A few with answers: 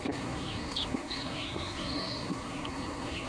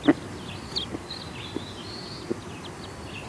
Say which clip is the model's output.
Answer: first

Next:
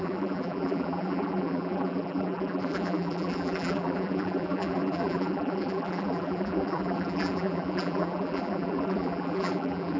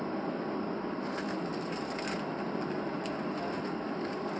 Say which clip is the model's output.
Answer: first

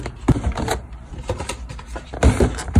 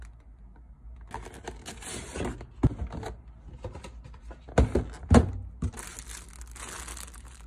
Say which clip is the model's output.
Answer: first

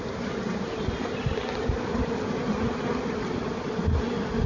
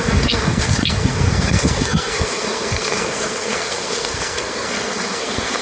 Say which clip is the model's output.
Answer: second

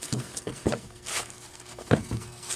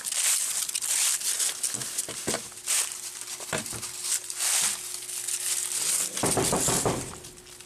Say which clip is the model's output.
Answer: first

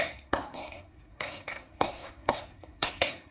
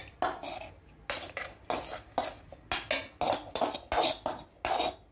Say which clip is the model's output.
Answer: first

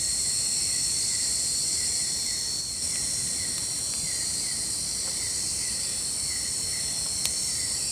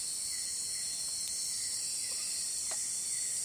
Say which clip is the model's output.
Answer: first